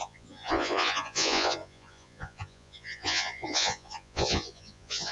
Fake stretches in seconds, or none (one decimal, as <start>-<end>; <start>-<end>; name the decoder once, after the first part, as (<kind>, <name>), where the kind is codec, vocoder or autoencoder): 0.0-5.1 (vocoder, Vocos)